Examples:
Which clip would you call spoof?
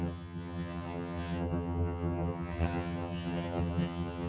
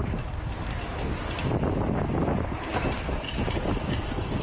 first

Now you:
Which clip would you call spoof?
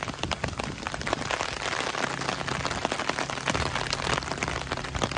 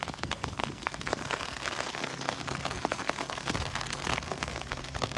second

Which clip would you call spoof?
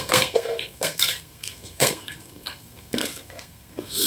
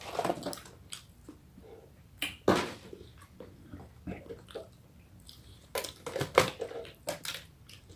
first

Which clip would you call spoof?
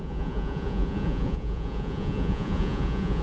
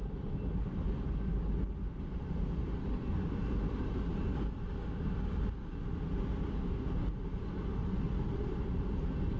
first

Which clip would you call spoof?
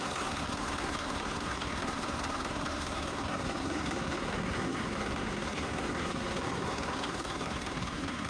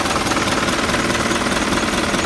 first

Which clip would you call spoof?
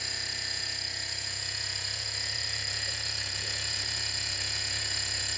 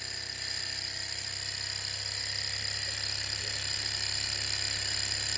first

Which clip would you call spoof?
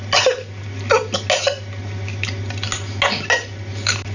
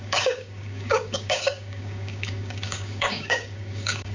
second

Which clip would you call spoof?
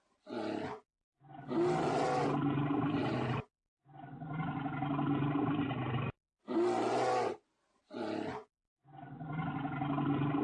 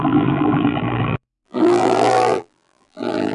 second